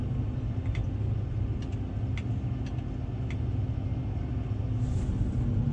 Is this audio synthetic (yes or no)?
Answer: no